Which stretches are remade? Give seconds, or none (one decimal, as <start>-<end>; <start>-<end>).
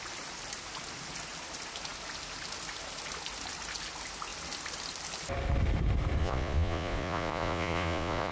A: 6.2-8.3